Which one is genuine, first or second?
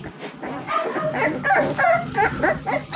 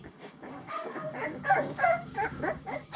first